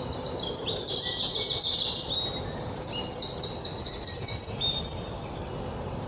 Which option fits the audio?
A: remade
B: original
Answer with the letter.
B